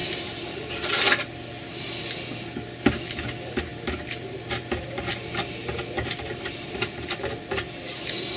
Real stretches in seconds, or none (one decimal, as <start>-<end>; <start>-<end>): 0.0-8.4